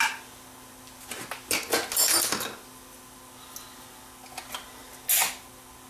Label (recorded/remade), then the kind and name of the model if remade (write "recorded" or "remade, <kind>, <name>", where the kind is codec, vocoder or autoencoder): recorded